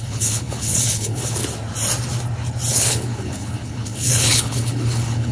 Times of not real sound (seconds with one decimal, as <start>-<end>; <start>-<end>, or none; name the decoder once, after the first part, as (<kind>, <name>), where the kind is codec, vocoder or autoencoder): 0.0-1.4 (codec, HILCodec); 2.7-5.3